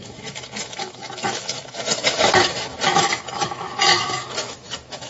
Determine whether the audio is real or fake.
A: fake